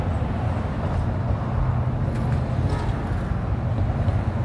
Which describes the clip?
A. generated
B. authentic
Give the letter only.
B